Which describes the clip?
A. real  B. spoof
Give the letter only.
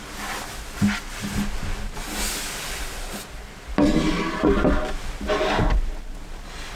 A